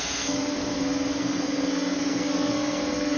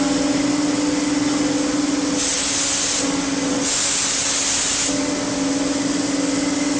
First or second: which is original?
second